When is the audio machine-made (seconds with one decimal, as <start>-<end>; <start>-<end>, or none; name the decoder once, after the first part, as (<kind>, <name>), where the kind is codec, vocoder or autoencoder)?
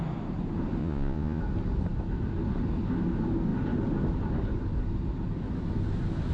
0.8-1.4 (vocoder, Vocos)